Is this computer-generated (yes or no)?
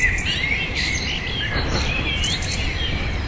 no